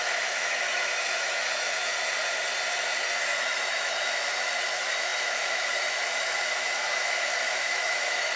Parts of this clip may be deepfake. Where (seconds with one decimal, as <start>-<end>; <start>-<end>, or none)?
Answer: 0.0-1.9; 3.4-8.4